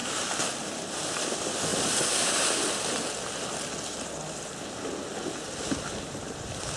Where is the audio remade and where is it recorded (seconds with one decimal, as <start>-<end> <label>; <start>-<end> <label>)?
0.0-0.9 recorded; 0.9-1.7 remade; 1.7-5.8 recorded; 5.8-6.8 remade